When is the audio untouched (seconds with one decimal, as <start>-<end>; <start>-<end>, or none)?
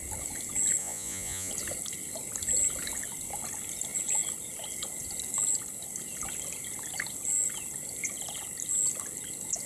0.0-0.8; 1.5-9.7